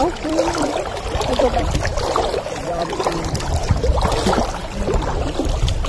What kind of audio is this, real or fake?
fake